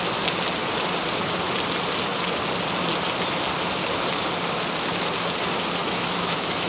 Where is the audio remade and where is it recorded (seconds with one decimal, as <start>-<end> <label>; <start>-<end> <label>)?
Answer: 0.0-5.8 recorded; 5.8-6.7 remade